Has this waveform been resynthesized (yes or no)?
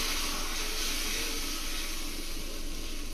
no